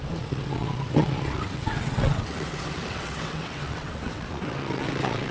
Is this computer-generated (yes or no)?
yes